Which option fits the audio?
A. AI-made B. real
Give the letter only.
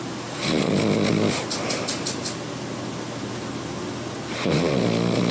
B